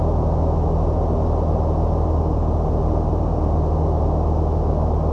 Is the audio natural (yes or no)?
yes